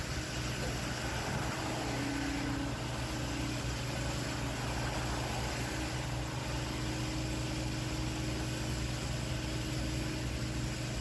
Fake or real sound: real